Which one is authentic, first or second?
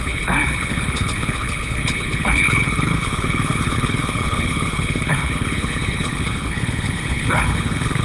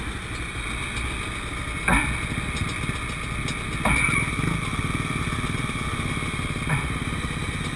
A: second